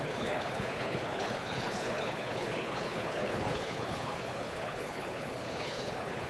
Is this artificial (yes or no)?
yes